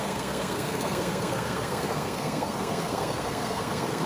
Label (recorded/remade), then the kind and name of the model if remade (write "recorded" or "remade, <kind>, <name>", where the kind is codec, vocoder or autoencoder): remade, codec, SNAC